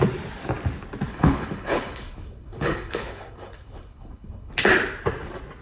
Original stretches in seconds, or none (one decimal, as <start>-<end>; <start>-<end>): 0.0-1.1; 4.5-5.6